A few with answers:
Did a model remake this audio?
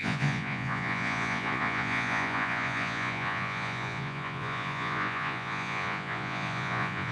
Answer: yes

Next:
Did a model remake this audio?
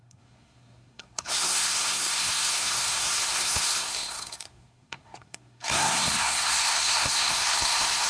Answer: yes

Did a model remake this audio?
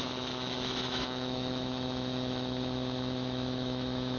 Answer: yes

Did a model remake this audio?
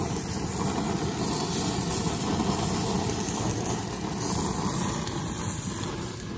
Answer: no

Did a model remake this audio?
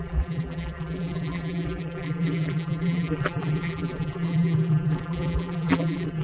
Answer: yes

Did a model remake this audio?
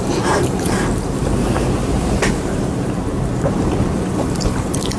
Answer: yes